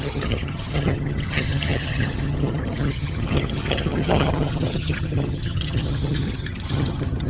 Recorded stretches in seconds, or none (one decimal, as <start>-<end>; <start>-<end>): none